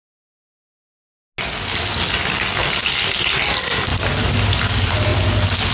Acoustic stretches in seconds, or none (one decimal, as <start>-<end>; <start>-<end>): 0.0-5.7